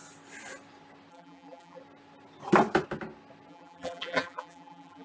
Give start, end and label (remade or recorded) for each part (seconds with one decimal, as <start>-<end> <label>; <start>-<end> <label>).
0.0-1.1 recorded; 1.1-1.8 remade; 1.8-3.5 recorded; 3.5-5.0 remade